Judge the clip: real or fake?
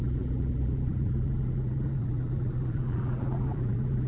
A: fake